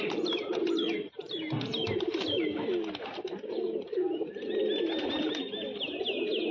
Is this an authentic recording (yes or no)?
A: yes